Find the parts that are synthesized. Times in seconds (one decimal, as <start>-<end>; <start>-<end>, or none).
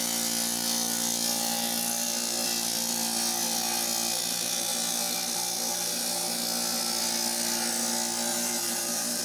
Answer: 8.3-9.2